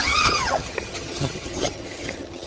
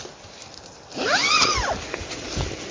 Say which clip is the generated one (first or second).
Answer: first